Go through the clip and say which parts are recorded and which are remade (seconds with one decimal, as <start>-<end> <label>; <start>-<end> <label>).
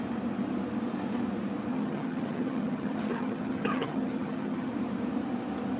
0.0-1.7 recorded; 1.7-4.7 remade; 4.7-5.8 recorded